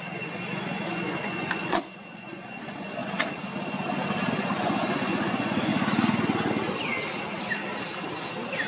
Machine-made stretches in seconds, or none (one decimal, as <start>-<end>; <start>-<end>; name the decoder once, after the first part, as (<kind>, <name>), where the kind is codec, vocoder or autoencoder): 0.0-3.0 (vocoder, Vocos); 4.3-5.7